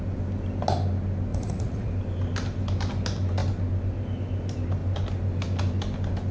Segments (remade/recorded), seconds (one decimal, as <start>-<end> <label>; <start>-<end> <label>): 0.0-1.3 recorded; 1.3-1.9 remade; 1.9-6.3 recorded